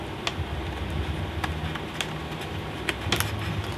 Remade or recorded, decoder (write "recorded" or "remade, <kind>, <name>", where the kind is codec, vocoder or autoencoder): recorded